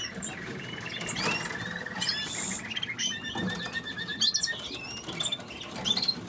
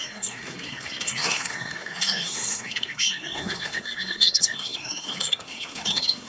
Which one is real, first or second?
first